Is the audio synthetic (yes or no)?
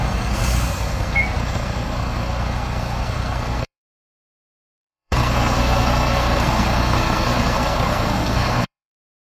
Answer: yes